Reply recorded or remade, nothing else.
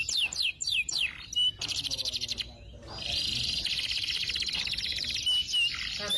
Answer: recorded